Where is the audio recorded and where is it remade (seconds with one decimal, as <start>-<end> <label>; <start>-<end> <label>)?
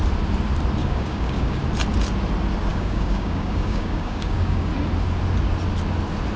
0.0-0.8 recorded; 0.8-1.6 remade; 1.6-2.7 recorded; 2.7-4.7 remade; 4.7-6.4 recorded